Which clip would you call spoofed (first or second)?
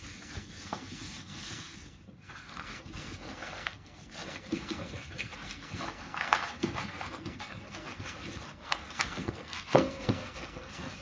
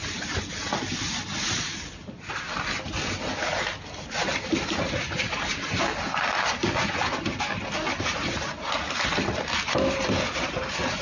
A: first